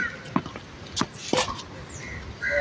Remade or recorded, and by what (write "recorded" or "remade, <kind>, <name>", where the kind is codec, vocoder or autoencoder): recorded